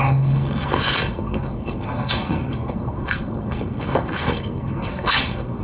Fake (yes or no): yes